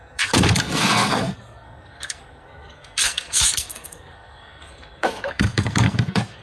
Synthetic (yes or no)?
yes